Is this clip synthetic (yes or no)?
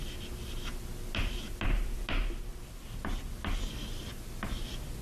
no